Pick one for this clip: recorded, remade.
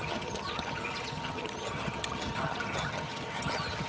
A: remade